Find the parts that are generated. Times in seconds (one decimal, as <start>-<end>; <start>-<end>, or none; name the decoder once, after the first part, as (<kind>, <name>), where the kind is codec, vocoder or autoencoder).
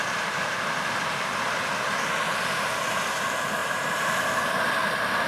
3.6-4.2 (vocoder, BigVGAN v2)